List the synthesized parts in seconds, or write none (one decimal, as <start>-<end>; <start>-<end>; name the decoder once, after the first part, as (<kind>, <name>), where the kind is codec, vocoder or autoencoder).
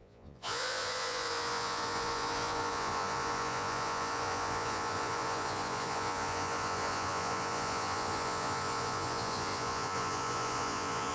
0.0-11.1 (vocoder, Vocos)